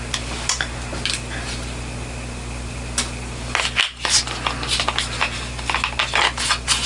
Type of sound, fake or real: real